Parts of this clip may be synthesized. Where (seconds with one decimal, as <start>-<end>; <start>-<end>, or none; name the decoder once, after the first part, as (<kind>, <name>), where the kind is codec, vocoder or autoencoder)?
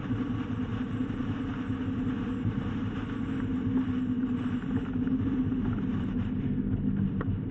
3.5-7.5 (vocoder, BigVGAN v2)